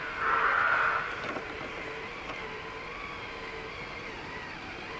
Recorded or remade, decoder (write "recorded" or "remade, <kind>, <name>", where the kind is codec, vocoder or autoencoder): recorded